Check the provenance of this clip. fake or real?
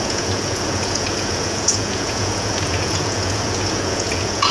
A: fake